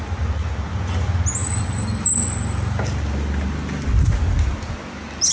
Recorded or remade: recorded